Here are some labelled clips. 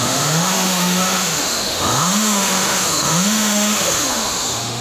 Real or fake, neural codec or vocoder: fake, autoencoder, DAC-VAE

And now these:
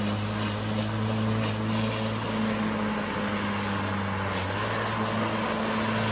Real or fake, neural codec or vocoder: real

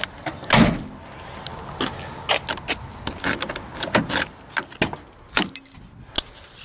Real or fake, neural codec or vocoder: real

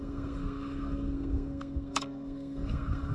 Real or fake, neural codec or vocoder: fake, codec, SNAC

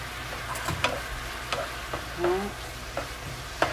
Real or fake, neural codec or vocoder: real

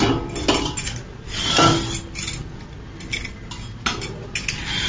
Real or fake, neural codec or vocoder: real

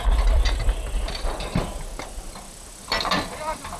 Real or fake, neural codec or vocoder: fake, vocoder, BigVGAN v2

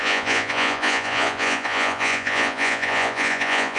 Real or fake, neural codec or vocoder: fake, vocoder, Vocos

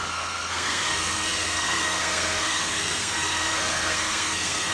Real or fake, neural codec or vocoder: fake, codec, SNAC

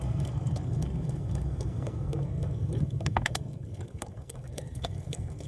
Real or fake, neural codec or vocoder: fake, codec, SNAC